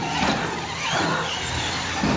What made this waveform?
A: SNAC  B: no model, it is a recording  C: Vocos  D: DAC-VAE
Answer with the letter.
B